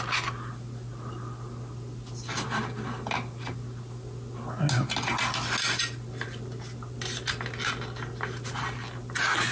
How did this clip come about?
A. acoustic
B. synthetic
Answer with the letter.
A